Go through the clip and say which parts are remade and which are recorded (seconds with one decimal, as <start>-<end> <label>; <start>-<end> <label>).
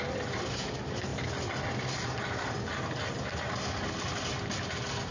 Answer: 0.0-5.1 recorded